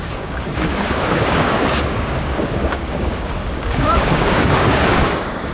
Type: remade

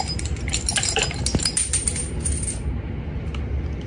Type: recorded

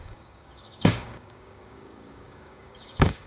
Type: remade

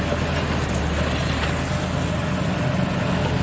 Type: recorded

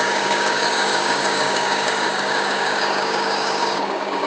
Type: remade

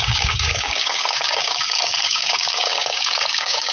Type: remade